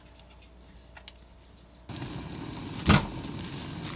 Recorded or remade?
recorded